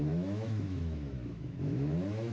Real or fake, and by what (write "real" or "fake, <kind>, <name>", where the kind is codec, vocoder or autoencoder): fake, autoencoder, DAC-VAE